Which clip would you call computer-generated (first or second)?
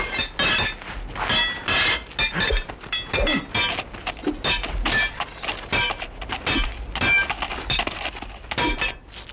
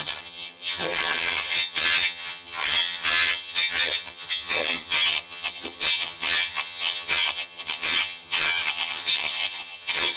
second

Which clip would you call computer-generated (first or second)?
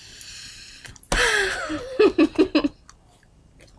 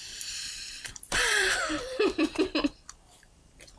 second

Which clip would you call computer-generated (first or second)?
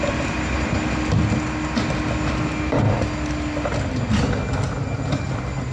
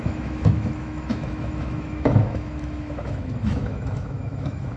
second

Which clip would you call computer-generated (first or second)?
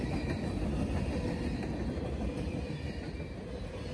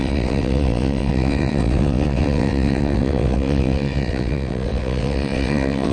second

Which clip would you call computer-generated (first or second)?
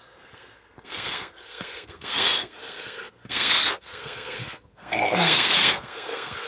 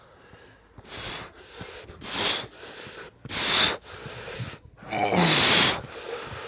first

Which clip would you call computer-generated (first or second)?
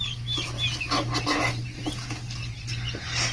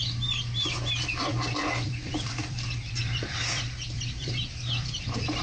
second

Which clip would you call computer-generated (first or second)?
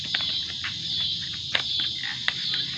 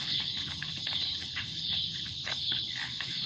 second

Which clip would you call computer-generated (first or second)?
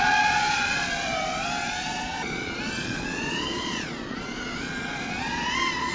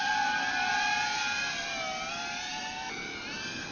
first